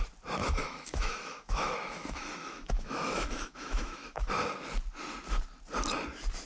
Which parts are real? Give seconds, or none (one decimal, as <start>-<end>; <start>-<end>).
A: 0.0-0.4; 4.3-6.5